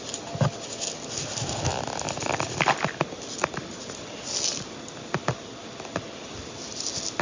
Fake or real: real